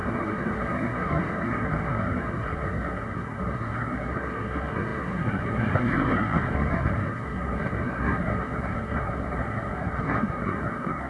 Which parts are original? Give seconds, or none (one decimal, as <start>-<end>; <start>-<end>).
none